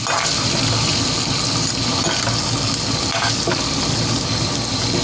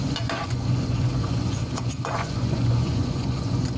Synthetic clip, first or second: second